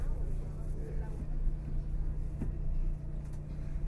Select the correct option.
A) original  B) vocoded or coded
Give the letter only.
A